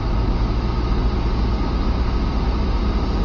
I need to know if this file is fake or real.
real